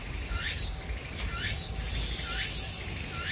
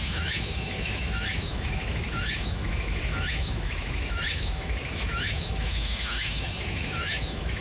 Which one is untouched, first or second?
first